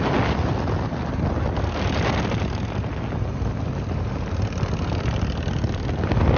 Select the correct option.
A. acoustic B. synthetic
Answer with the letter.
A